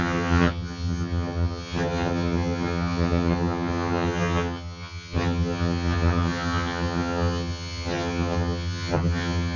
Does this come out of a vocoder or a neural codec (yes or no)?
yes